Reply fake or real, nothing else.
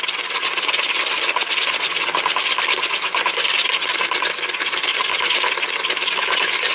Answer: real